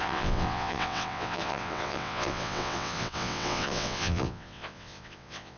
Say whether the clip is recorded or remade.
remade